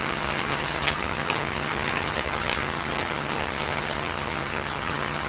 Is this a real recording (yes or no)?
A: no